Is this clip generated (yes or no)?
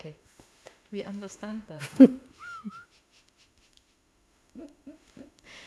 yes